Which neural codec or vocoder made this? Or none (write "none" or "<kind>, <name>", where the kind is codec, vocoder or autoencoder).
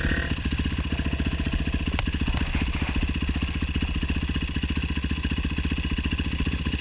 none